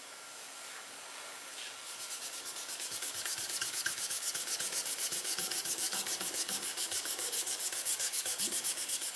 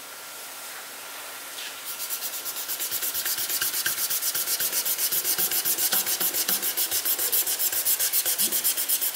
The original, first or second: second